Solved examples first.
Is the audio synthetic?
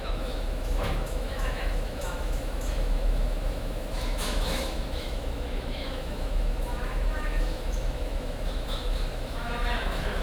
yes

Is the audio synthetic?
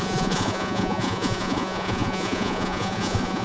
yes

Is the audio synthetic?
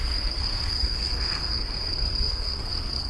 yes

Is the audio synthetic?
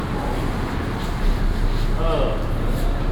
no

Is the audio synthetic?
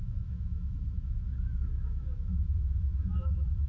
yes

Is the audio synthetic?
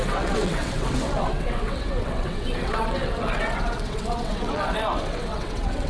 yes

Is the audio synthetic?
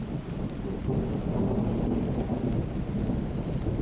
no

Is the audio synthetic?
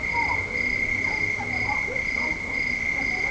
no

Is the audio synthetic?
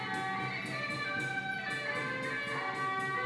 no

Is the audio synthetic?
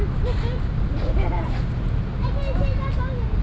no